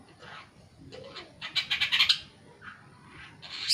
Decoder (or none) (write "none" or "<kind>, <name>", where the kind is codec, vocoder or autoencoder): none